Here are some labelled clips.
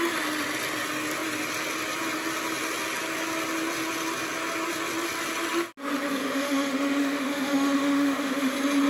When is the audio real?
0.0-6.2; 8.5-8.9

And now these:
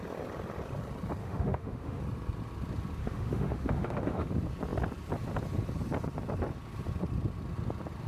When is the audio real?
0.0-1.2; 2.0-3.0; 4.3-8.1

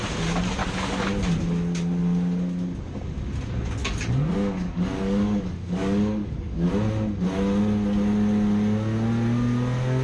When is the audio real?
0.0-0.6; 1.1-3.8; 6.7-10.0

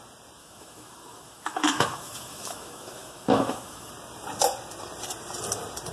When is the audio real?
0.0-0.4; 3.9-5.9

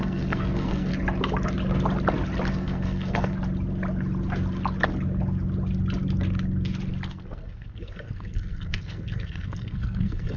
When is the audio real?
0.9-2.5; 3.3-7.1

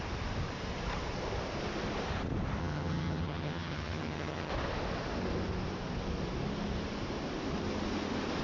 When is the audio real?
0.0-2.6; 4.5-8.4

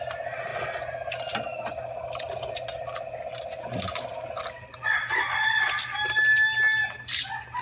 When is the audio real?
0.0-7.6

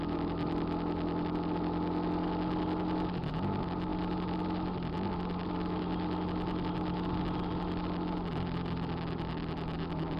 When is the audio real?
0.0-10.2